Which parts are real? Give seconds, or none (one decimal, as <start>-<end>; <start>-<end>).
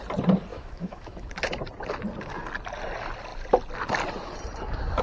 0.0-0.5; 1.3-5.0